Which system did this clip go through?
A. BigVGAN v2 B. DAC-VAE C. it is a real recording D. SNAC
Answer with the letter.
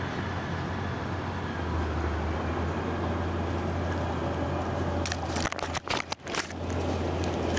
C